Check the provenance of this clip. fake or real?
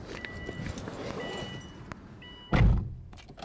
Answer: real